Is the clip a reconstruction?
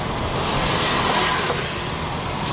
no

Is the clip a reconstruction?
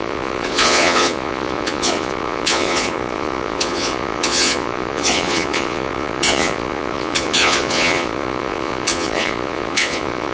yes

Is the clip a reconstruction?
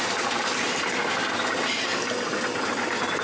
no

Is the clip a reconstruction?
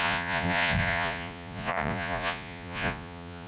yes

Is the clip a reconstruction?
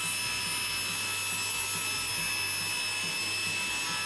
no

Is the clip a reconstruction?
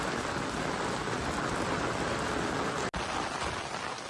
no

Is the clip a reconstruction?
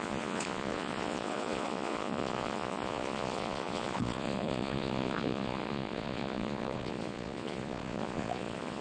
yes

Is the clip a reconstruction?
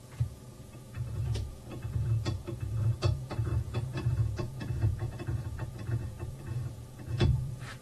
yes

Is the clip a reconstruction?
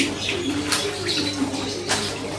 no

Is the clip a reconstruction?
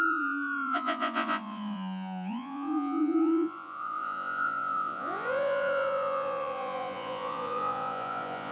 yes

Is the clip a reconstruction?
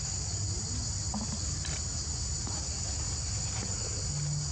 no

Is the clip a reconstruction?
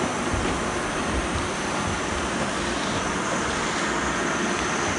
no